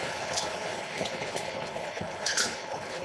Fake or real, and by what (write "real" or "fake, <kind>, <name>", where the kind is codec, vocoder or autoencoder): fake, codec, HILCodec